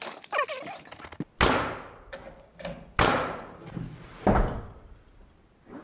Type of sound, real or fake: real